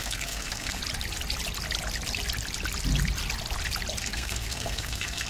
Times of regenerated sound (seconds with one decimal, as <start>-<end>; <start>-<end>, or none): 0.0-0.8; 4.0-5.3